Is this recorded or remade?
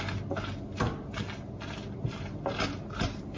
recorded